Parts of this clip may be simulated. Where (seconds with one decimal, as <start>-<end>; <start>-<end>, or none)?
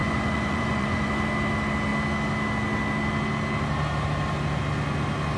0.0-1.1